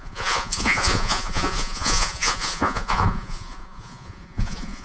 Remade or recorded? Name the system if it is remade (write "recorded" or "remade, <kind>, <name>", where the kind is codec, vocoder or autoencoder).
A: remade, vocoder, Vocos